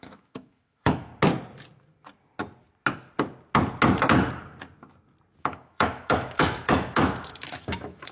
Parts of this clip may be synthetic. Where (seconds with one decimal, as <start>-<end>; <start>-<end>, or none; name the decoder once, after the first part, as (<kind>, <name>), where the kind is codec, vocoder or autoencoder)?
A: 0.0-1.1 (autoencoder, DAC-VAE); 5.4-8.1